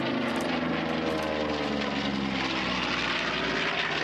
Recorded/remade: recorded